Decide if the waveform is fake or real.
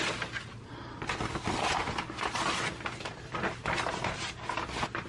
real